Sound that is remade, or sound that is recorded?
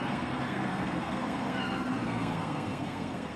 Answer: remade